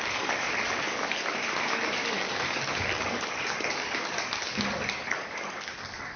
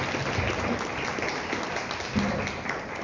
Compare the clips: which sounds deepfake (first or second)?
first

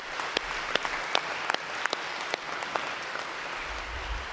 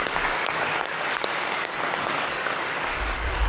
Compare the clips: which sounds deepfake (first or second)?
second